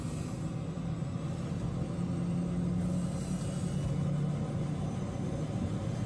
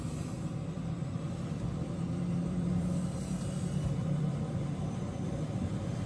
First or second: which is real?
first